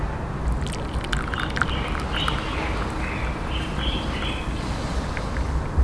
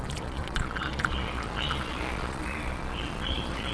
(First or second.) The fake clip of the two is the second